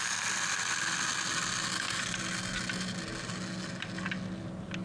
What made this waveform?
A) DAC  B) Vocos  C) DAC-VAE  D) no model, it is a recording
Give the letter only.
D